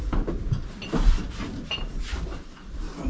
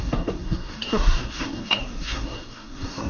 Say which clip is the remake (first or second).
second